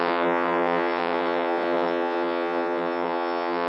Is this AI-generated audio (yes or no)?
yes